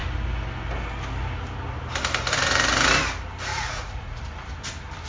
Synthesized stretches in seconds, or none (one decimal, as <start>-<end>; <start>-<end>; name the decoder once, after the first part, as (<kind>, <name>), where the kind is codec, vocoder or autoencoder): 3.5-4.2 (vocoder, Vocos)